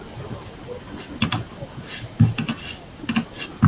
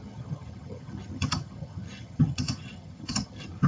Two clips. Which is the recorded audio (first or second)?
first